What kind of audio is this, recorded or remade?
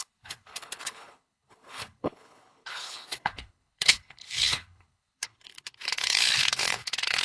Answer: remade